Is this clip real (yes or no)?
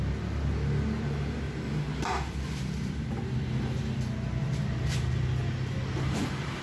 yes